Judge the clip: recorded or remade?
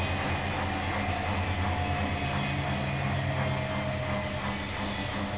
recorded